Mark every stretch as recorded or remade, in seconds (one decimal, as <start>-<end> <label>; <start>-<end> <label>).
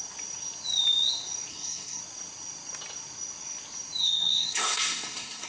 0.0-1.5 recorded; 1.5-2.0 remade; 2.0-4.0 recorded; 4.0-5.5 remade